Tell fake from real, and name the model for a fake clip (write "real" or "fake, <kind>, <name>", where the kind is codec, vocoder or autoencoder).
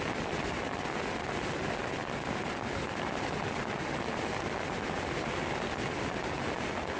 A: real